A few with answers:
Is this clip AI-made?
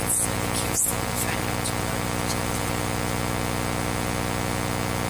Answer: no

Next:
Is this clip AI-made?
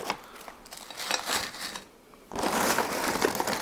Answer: no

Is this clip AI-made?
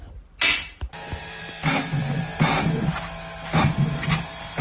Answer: no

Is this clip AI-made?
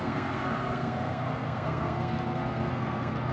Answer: yes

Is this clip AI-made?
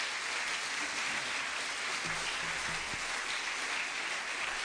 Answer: no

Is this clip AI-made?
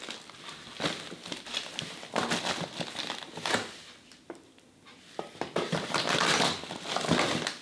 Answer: no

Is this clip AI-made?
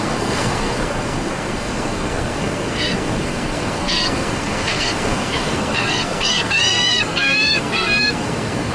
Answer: yes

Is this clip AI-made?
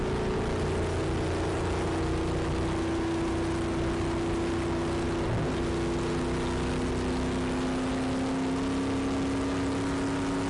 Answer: no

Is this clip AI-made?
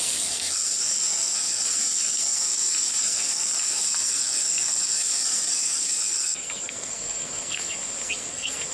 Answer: yes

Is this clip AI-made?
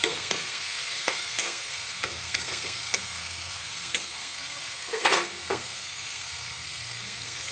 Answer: yes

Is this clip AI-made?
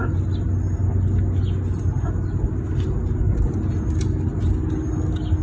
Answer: no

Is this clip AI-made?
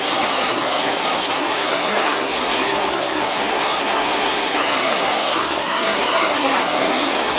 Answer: yes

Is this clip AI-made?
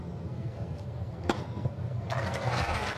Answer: yes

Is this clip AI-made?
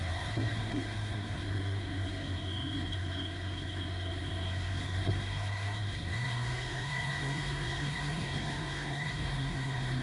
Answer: yes